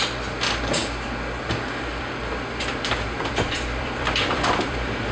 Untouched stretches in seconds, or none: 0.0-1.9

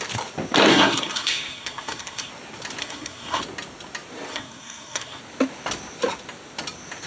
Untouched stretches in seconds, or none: 0.0-0.7; 2.3-2.8; 3.4-4.3; 5.2-7.1

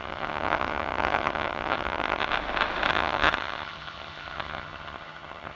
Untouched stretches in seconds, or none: 2.3-2.9